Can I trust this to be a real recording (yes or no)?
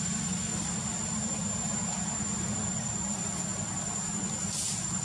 yes